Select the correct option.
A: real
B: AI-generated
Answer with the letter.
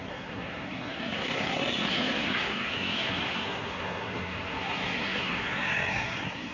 B